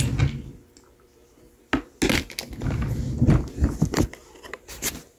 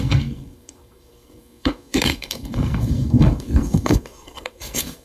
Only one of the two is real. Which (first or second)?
first